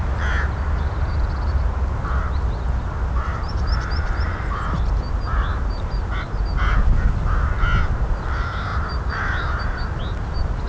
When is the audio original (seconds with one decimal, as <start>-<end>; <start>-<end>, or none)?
0.0-3.3; 5.0-5.5; 6.4-10.7